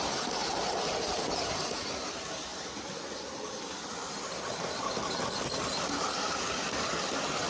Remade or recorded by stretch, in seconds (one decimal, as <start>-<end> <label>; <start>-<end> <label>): 0.0-0.4 recorded; 0.4-1.5 remade; 1.5-7.5 recorded